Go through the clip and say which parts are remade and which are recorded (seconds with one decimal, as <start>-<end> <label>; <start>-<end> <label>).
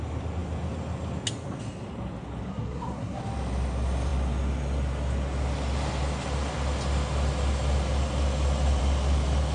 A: 0.0-2.5 recorded; 2.5-3.2 remade; 3.2-9.5 recorded